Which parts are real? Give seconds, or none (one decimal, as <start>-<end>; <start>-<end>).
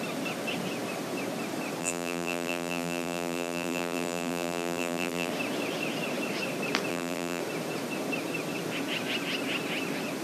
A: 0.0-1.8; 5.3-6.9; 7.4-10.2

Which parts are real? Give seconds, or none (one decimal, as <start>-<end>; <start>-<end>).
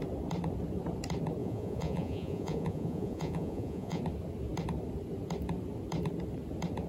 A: 0.0-1.4; 4.0-6.9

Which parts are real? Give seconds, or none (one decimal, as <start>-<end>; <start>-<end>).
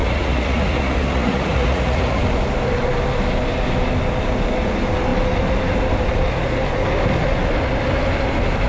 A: 2.2-8.7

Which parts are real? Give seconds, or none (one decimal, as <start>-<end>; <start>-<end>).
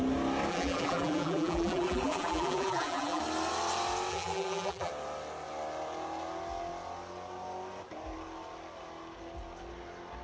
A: 0.0-0.5; 3.2-4.1; 4.9-10.2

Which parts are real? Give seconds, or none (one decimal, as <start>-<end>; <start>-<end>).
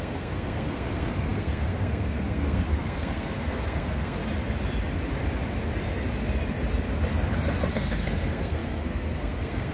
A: 4.2-7.7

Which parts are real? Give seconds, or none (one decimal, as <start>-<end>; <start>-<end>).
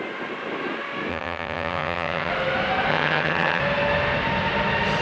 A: 0.0-1.1; 2.3-2.9; 3.6-5.0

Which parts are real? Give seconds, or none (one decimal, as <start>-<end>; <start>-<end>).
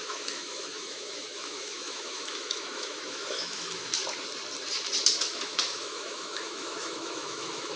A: 4.0-5.2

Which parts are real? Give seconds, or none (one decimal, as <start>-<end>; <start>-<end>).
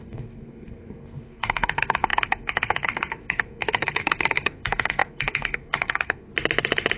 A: 6.3-7.0